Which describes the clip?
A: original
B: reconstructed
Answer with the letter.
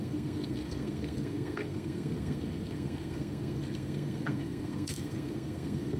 B